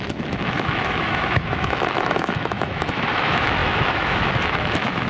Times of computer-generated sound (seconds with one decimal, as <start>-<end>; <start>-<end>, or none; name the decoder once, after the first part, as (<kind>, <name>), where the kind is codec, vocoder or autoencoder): 0.0-5.1 (autoencoder, DAC-VAE)